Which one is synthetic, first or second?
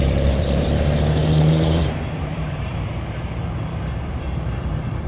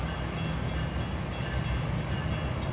first